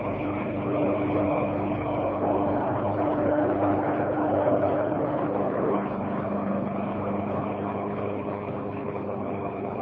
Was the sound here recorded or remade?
remade